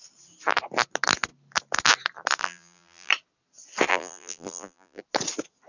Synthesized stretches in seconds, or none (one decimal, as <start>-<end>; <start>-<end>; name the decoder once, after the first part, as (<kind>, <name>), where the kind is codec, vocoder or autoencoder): 2.4-3.1 (vocoder, BigVGAN v2); 3.9-5.0